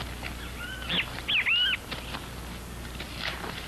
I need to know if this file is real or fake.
real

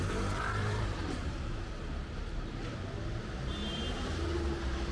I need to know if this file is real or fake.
fake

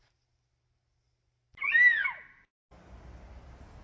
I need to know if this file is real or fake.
real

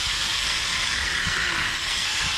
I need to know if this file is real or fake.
fake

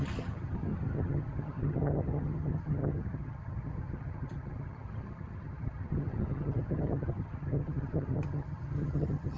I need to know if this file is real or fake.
fake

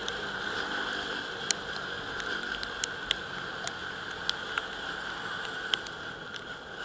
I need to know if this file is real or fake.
real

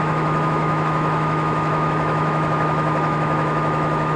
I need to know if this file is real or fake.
fake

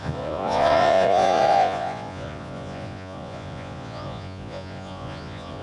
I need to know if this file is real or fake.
fake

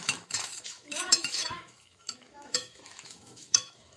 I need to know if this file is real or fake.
fake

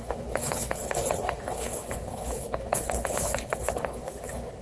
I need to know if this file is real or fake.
fake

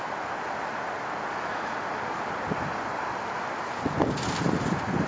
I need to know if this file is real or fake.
real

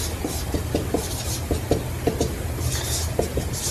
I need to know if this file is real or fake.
real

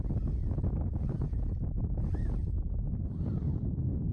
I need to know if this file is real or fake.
real